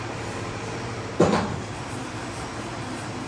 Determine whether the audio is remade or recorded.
remade